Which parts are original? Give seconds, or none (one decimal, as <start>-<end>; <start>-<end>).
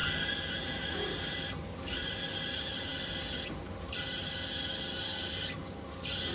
0.0-6.3